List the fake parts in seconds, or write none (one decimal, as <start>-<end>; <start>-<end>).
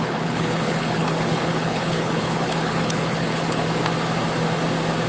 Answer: 0.0-3.6